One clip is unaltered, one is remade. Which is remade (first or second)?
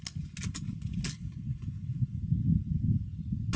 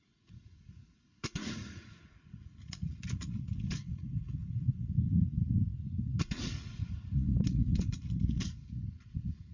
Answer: second